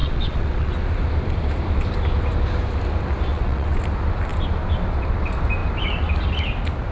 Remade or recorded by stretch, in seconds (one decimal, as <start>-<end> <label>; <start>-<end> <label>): 0.0-0.7 remade; 0.7-3.3 recorded; 3.3-3.8 remade; 3.8-6.9 recorded